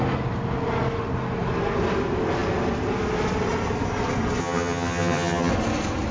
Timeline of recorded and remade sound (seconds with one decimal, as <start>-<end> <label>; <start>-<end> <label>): 0.0-4.4 recorded; 4.4-5.5 remade; 5.5-6.1 recorded